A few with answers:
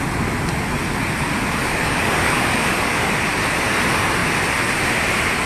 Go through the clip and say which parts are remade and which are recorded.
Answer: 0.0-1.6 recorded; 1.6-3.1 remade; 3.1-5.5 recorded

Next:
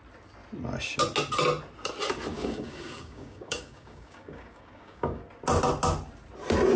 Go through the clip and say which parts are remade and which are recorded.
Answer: 0.0-2.3 recorded; 2.3-5.2 remade; 5.2-6.8 recorded

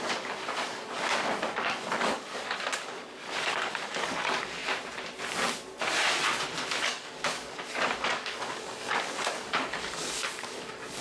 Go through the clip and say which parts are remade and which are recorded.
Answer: 0.0-4.6 remade; 4.6-6.8 recorded; 6.8-11.0 remade

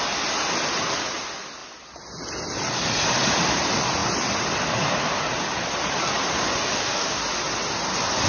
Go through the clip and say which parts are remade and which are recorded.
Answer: 0.0-6.7 recorded; 6.7-7.2 remade; 7.2-8.3 recorded

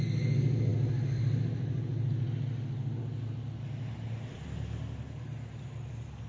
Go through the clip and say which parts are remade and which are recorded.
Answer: 0.0-6.3 recorded

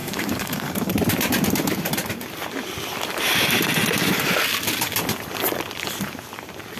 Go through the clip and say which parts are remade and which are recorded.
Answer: 0.0-0.9 remade; 0.9-6.8 recorded

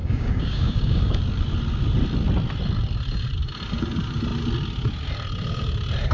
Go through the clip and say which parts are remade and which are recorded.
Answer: 0.0-1.2 remade; 1.2-6.1 recorded

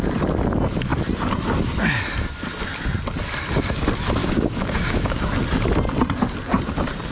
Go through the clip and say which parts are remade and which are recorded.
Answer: 0.0-4.2 recorded; 4.2-5.3 remade; 5.3-7.1 recorded